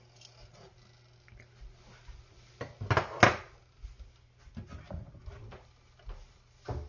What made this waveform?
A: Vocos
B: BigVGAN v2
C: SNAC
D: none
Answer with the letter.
D